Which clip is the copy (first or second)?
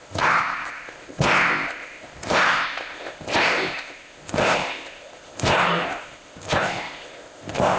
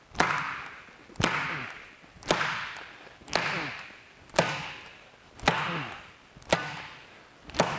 first